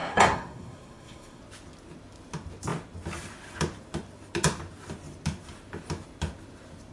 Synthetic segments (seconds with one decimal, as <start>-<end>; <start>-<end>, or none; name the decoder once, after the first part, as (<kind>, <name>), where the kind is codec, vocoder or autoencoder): 0.0-1.4 (codec, SNAC)